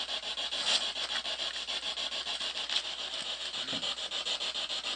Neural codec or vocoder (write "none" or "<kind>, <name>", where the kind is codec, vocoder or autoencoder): none